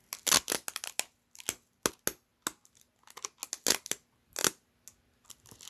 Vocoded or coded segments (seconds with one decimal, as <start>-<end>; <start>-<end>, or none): none